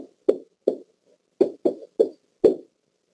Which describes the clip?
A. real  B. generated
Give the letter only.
A